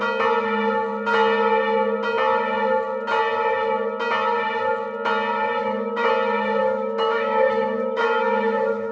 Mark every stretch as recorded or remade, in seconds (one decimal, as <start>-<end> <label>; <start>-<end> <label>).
0.0-5.6 recorded; 5.6-6.1 remade; 6.1-6.6 recorded; 6.6-8.9 remade